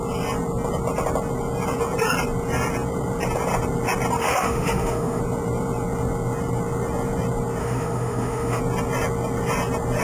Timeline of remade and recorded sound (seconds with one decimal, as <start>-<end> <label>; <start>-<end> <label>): 0.0-4.2 recorded; 4.2-5.2 remade; 5.2-7.6 recorded; 7.6-8.6 remade; 8.6-10.0 recorded